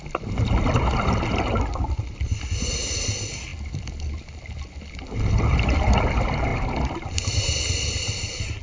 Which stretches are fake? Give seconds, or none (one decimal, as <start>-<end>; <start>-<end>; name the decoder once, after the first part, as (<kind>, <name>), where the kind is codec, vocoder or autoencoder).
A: none